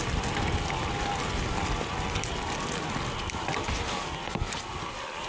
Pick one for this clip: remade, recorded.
recorded